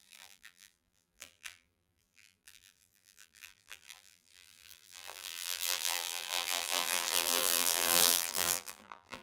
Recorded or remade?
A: remade